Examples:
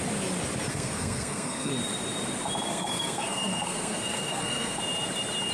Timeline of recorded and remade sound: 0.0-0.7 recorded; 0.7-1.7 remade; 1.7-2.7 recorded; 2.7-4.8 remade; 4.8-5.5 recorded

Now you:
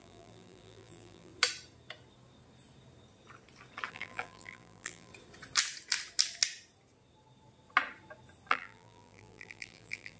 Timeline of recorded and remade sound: 0.0-1.3 remade; 1.3-3.9 recorded; 3.9-5.1 remade; 5.1-8.5 recorded; 8.5-10.2 remade

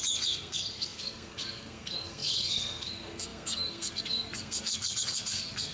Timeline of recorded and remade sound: 0.0-5.7 remade

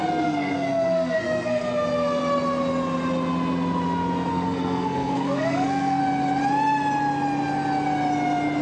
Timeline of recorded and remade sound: 0.0-2.2 remade; 2.2-4.3 recorded; 4.3-6.0 remade; 6.0-8.6 recorded

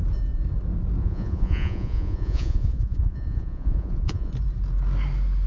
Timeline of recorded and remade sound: 0.0-1.0 recorded; 1.0-4.3 remade; 4.3-5.5 recorded

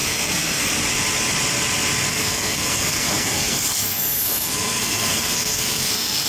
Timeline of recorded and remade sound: 0.0-0.7 remade; 0.7-2.1 recorded; 2.1-6.3 remade

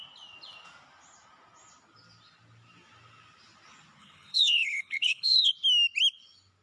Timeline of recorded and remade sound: 0.0-4.0 recorded; 4.0-5.5 remade; 5.5-6.6 recorded

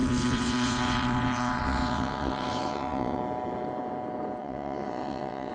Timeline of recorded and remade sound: 0.0-3.2 remade; 3.2-4.4 recorded; 4.4-5.5 remade